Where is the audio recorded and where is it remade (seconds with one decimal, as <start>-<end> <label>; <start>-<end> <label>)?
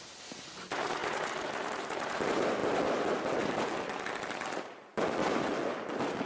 0.0-6.3 recorded